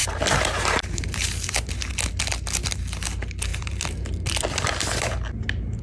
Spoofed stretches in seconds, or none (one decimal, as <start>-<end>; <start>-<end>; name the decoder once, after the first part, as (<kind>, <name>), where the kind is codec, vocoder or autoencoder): 0.0-1.8 (vocoder, BigVGAN v2); 3.5-4.4

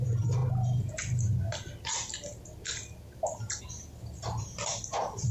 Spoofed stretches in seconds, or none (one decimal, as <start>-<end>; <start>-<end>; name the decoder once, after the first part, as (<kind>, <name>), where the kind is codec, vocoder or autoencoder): 0.0-0.4 (vocoder, BigVGAN v2); 3.6-5.3

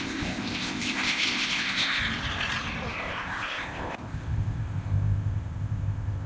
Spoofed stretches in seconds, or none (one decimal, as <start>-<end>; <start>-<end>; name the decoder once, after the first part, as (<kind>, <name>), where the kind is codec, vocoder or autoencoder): 0.0-2.0 (codec, ZipCodec); 2.9-6.3

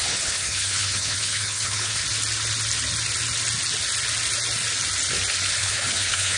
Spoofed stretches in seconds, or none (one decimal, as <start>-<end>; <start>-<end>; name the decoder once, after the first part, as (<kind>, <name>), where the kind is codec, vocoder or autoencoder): 0.0-2.0 (codec, HILCodec); 5.6-6.4

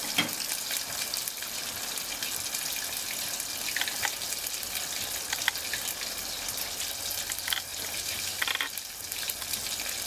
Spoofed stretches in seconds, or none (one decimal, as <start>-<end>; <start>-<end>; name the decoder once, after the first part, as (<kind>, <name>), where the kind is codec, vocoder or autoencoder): 7.7-9.4 (vocoder, BigVGAN v2)